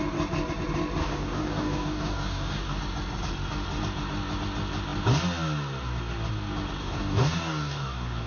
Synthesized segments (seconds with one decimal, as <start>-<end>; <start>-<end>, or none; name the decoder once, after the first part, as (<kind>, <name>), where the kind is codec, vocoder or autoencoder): 1.0-2.8 (codec, DAC); 6.8-8.3